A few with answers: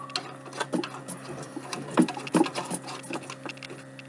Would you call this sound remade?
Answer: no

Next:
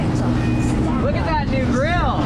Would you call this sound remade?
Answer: no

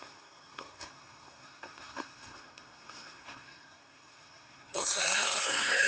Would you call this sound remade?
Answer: yes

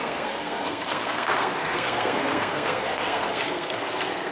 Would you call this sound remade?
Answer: yes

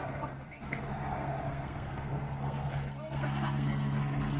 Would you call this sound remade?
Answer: yes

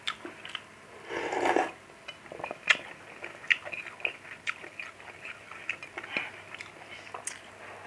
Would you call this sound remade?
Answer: no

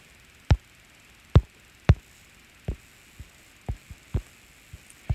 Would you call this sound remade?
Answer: no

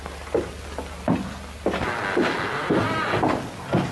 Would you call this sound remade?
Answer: no